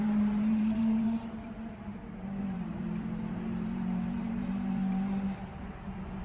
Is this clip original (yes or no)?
no